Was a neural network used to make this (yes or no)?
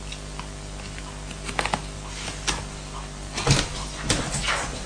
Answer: no